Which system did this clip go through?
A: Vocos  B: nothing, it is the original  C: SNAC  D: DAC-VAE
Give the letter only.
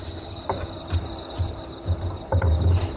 B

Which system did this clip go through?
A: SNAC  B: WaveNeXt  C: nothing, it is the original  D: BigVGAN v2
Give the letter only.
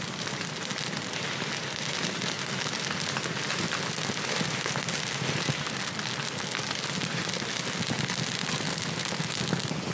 C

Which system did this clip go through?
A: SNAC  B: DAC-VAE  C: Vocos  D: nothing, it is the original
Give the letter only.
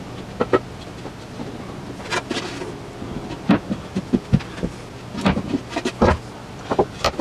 D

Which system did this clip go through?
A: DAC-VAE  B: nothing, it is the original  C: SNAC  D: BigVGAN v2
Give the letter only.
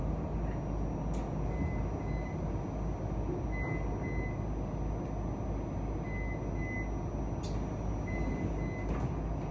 B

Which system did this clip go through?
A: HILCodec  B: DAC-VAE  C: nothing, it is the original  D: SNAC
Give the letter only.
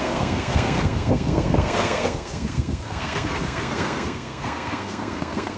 D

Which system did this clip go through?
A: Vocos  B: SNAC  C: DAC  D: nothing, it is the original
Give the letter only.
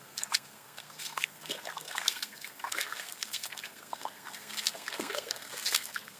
B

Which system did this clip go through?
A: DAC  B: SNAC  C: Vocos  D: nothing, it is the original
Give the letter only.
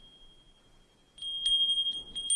D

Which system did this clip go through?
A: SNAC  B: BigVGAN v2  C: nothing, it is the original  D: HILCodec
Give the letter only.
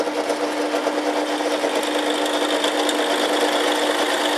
C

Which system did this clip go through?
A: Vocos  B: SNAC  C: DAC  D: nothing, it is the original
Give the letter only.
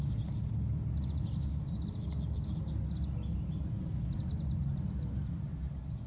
D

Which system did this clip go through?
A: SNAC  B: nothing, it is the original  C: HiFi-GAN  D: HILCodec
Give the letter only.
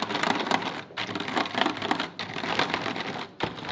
B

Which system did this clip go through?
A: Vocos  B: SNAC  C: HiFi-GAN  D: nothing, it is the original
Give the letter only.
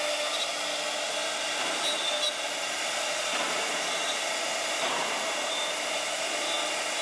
D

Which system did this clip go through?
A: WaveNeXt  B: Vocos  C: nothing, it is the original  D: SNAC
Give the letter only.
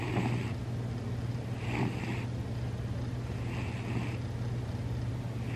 C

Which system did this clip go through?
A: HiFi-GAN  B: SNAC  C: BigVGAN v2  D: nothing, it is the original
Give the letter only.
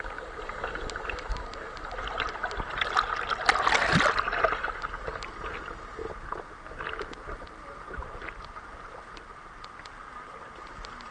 D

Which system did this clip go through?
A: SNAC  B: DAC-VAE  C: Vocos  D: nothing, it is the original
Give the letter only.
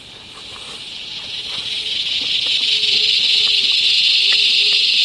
D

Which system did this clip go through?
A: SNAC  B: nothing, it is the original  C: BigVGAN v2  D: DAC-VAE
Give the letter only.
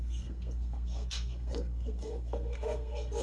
A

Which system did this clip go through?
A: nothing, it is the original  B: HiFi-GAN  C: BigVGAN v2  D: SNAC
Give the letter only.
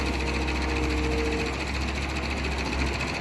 A